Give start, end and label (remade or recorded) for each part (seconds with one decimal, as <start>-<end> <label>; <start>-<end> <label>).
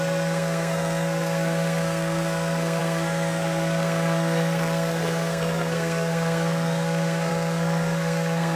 0.0-8.6 remade